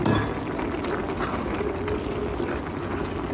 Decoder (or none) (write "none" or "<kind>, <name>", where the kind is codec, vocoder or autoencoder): none